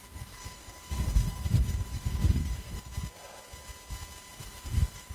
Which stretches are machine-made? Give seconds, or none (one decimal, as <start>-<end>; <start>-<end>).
0.0-2.9; 4.3-5.1